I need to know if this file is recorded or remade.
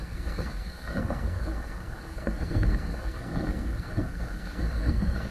remade